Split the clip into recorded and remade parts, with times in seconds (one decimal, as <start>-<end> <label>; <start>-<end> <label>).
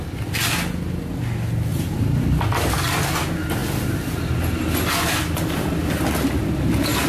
0.0-1.7 recorded; 1.7-2.4 remade; 2.4-7.1 recorded